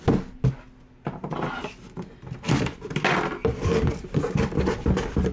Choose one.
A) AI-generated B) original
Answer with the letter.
B